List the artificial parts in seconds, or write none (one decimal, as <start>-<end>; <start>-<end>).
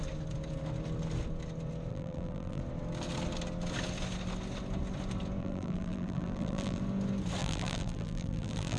1.9-2.6; 5.4-6.8; 7.4-8.8